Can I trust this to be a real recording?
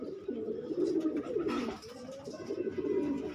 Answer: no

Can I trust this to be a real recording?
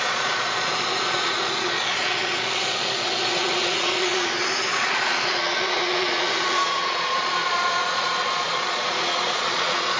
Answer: no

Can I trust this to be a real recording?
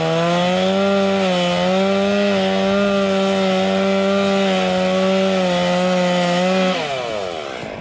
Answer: yes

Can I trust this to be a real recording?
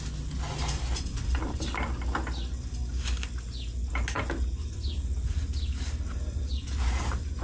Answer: yes